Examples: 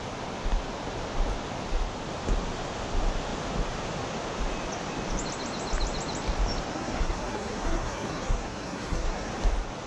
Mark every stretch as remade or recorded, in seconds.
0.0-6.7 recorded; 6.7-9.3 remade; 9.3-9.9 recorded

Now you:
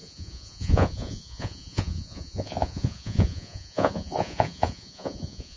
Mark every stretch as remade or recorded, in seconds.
0.0-5.6 remade

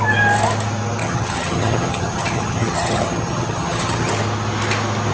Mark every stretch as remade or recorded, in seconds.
0.0-1.0 recorded; 1.0-4.1 remade; 4.1-5.1 recorded

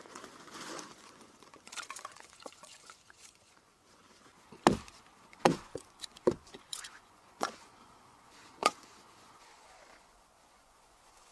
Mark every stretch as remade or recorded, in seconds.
0.0-4.0 remade; 4.0-5.2 recorded; 5.2-11.3 remade

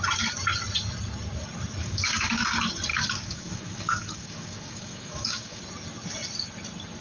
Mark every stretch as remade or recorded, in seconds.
0.0-1.8 recorded; 1.8-2.4 remade; 2.4-2.9 recorded; 2.9-5.6 remade; 5.6-7.0 recorded

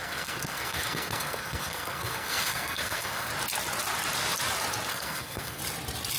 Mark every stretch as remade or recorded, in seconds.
0.0-3.3 remade; 3.3-4.9 recorded; 4.9-5.6 remade; 5.6-6.2 recorded